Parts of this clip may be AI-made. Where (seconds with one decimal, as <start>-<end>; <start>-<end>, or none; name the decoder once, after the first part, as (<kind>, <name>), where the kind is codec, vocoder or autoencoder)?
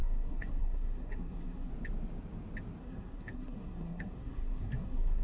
0.0-1.7 (codec, SNAC); 2.8-5.2